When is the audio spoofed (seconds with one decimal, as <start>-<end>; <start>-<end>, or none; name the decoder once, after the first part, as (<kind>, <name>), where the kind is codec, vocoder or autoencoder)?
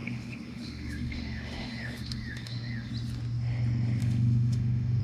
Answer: 0.0-2.9 (autoencoder, DAC-VAE); 4.0-5.0